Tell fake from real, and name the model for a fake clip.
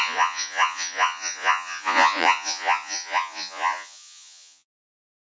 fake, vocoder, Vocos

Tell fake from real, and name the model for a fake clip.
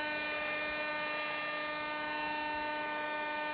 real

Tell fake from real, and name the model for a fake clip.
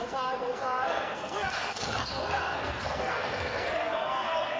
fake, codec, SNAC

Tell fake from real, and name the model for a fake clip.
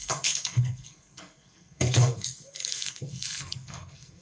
fake, codec, SNAC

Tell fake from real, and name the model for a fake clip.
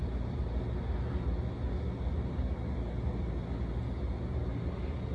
real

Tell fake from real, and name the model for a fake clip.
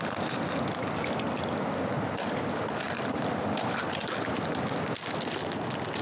real